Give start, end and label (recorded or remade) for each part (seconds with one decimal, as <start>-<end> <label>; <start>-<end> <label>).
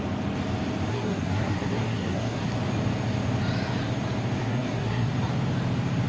0.0-0.9 recorded; 0.9-2.6 remade; 2.6-4.4 recorded; 4.4-5.1 remade; 5.1-6.1 recorded